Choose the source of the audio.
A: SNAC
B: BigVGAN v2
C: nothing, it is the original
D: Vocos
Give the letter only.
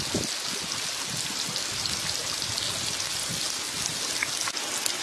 C